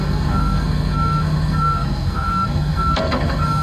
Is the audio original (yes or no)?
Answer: no